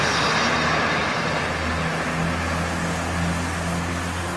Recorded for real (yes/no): yes